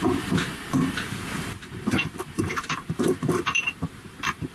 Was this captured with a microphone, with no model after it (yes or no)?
no